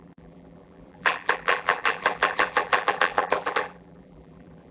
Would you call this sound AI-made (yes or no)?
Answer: yes